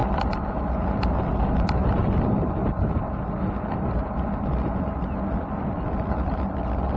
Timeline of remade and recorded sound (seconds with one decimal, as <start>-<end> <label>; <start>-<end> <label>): 0.0-7.0 recorded